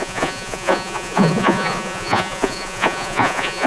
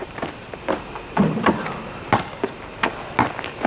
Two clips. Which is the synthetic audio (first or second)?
first